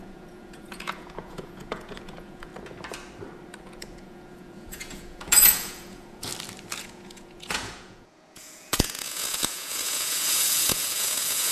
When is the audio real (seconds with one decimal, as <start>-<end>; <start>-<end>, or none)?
2.5-3.6; 6.3-6.8